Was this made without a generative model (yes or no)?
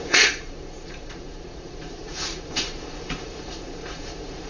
no